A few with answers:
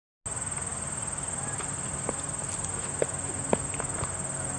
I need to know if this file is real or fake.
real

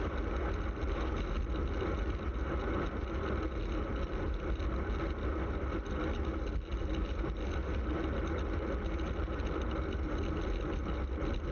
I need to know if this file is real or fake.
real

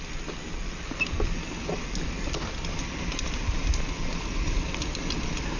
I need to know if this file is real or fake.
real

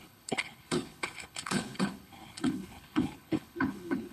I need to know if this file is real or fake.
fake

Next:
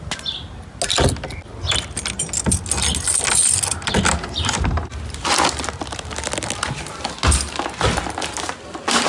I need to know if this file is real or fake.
real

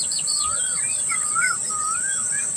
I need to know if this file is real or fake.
real